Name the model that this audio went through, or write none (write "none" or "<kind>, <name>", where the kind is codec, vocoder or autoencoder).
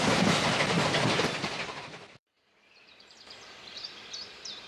vocoder, BigVGAN v2